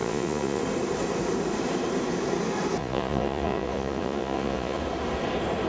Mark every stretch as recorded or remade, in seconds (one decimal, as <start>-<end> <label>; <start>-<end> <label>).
0.0-0.6 remade; 0.6-2.8 recorded; 2.8-4.8 remade; 4.8-5.7 recorded